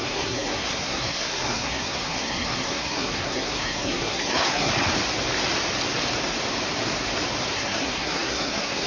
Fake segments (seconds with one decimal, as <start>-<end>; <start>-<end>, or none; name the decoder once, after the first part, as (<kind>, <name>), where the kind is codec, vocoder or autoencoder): 0.0-4.7 (codec, SNAC); 7.5-8.9